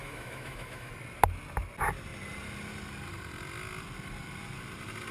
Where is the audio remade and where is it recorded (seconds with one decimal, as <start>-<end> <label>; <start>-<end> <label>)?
0.0-0.9 remade; 0.9-5.1 recorded